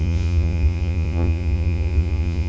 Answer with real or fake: fake